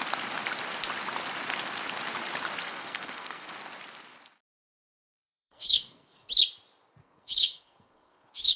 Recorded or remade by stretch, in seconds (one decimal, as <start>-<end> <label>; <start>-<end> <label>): 0.0-2.6 recorded; 2.6-3.5 remade; 3.5-5.1 recorded; 5.1-6.3 remade; 6.3-7.0 recorded; 7.0-8.6 remade